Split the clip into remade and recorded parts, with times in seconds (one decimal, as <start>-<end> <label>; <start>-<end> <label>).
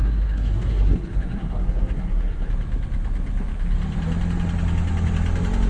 0.0-2.5 remade; 2.5-5.7 recorded